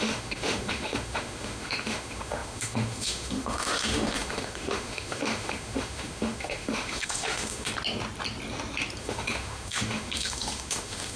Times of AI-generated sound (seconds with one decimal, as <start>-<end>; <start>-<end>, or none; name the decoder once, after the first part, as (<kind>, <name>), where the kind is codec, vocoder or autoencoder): 0.0-7.7 (autoencoder, DAC-VAE); 9.0-11.2